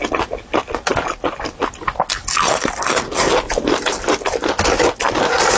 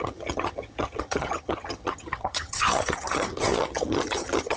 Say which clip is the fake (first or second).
second